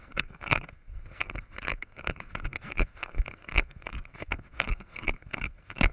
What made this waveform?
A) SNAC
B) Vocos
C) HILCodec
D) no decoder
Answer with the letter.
A